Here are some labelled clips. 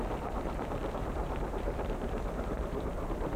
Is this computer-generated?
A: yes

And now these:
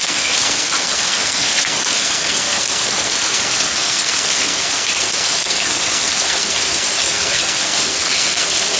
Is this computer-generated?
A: yes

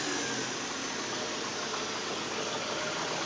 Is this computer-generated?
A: no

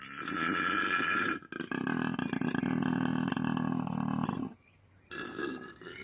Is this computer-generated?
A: no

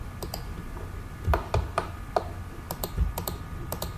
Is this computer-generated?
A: no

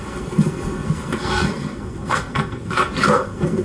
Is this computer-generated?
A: yes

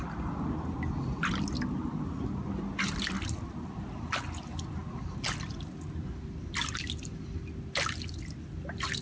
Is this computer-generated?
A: no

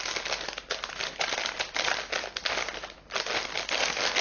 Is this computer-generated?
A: no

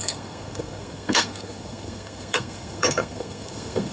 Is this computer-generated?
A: yes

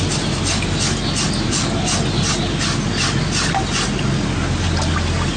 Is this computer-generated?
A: no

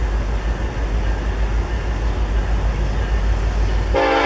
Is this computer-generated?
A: no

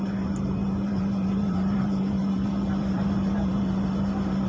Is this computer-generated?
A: yes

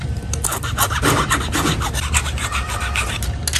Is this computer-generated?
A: no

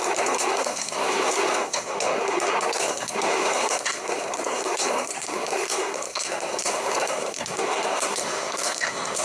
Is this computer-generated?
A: yes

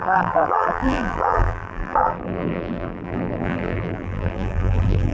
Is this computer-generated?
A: yes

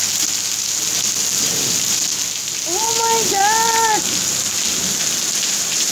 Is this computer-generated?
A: no